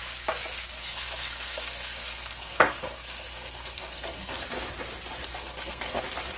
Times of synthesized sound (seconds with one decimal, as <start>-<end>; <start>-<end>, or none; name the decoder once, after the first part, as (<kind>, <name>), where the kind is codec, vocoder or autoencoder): 0.8-4.4 (codec, SNAC); 5.3-6.0